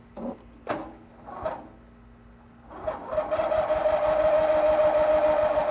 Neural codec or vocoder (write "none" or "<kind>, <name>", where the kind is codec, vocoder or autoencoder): none